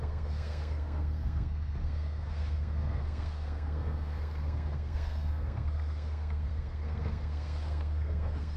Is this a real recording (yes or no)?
no